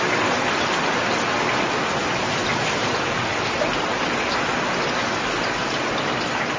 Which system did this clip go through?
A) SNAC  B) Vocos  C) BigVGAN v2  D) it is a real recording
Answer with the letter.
D